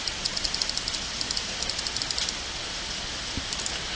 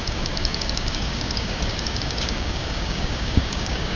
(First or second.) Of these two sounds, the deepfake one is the second